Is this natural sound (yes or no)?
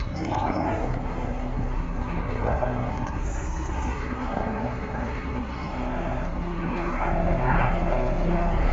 no